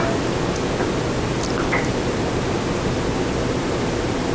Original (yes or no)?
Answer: yes